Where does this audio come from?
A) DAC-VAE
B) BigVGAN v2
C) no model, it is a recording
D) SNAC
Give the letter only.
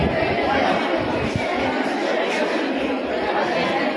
C